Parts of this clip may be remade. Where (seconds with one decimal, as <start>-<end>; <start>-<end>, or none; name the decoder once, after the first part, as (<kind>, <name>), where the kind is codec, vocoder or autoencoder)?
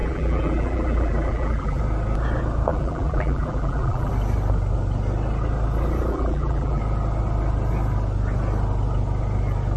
0.0-1.8 (vocoder, BigVGAN v2); 2.7-4.1; 6.1-6.8